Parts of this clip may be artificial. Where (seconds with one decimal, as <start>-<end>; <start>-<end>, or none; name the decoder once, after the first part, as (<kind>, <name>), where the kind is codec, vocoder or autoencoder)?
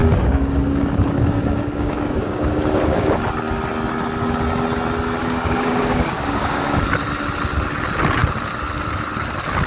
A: 0.0-3.2 (codec, DAC); 5.2-6.8